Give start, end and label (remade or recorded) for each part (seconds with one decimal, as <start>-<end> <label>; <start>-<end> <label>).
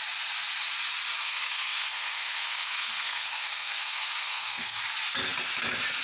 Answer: 0.0-1.2 recorded; 1.2-4.8 remade; 4.8-6.0 recorded